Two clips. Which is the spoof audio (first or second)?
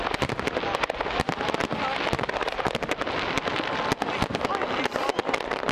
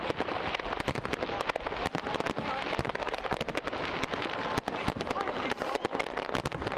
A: second